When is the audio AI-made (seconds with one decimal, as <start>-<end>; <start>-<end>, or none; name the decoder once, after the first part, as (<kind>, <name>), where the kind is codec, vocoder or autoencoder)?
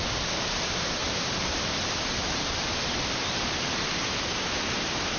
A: 1.0-4.1 (vocoder, BigVGAN v2)